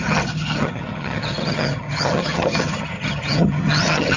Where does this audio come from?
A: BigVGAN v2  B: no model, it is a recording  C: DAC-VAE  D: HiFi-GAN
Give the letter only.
D